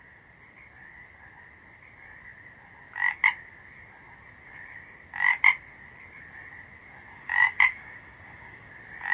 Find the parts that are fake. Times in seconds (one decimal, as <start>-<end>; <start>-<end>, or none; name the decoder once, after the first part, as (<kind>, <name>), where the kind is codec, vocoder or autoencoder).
7.1-8.7 (codec, DAC)